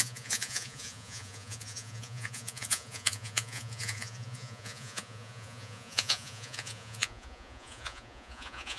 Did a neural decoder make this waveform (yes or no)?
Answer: yes